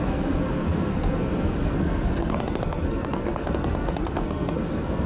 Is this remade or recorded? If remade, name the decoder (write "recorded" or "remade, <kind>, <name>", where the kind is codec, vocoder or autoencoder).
remade, codec, SNAC